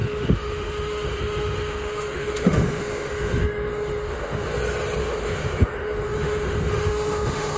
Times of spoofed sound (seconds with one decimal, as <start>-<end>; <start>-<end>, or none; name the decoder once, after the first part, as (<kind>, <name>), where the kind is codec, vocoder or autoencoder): 0.0-4.6 (autoencoder, DAC-VAE); 5.0-7.6